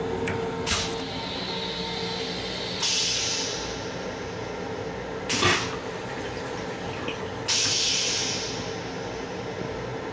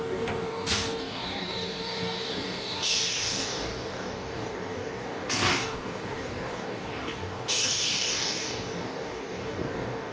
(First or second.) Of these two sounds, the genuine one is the first